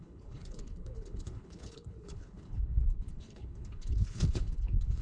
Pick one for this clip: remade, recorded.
remade